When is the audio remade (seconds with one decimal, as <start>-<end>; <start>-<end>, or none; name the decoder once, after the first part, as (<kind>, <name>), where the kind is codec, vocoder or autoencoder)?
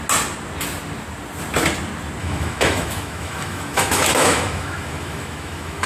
2.2-5.9 (autoencoder, DAC-VAE)